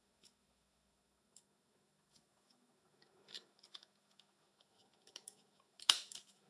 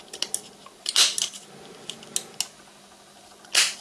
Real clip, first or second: second